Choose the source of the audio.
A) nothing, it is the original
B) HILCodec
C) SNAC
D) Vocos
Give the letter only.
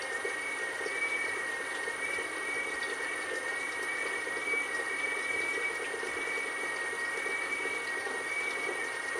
A